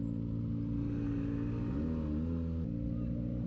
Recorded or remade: recorded